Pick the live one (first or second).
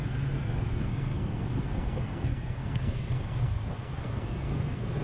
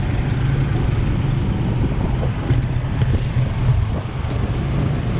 second